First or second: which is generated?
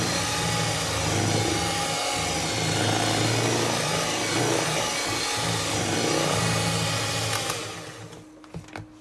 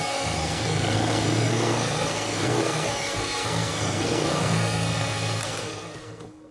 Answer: second